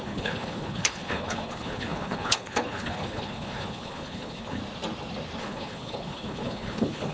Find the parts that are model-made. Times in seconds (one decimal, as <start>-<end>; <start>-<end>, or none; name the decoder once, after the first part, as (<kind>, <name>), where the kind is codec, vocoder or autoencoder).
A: 0.0-4.6 (codec, HILCodec); 5.4-7.1